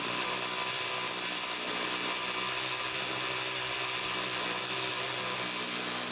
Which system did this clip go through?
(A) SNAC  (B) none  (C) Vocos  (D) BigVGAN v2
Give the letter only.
B